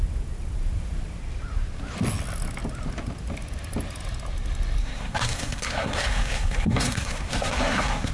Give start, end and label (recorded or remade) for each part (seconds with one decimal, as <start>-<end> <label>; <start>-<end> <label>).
0.0-4.8 recorded; 4.8-8.1 remade